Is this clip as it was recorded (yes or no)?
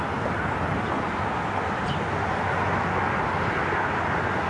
yes